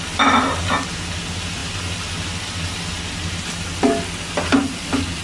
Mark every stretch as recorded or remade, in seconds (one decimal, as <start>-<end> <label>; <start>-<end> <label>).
0.0-5.2 recorded

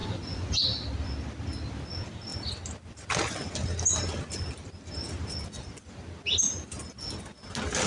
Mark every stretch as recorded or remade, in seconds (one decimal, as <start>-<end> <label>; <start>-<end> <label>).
0.0-0.6 remade; 0.6-7.9 recorded

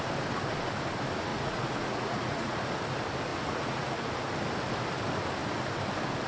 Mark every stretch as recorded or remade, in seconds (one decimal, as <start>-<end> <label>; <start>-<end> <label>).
0.0-1.3 recorded; 1.3-2.6 remade; 2.6-3.3 recorded; 3.3-4.1 remade; 4.1-6.3 recorded

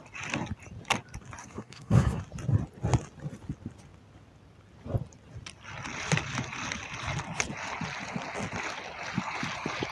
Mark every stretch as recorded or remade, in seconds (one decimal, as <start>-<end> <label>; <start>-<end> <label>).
0.0-1.4 recorded; 1.4-2.2 remade; 2.2-9.9 recorded